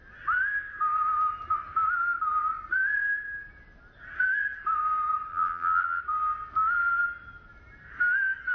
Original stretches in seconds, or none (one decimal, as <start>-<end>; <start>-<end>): 0.0-5.3; 6.0-8.5